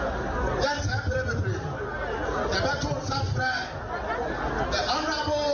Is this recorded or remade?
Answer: recorded